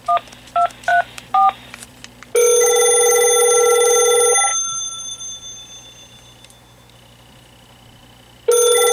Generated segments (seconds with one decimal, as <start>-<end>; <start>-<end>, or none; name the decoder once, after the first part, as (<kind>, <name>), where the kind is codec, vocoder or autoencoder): 0.9-2.0 (vocoder, BigVGAN v2); 4.5-5.2